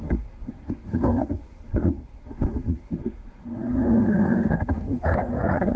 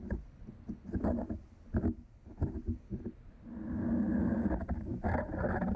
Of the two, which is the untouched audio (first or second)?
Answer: second